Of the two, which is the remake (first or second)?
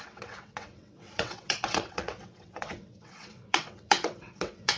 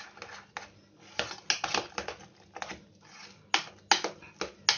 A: first